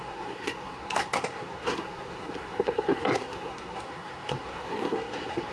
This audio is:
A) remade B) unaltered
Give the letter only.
A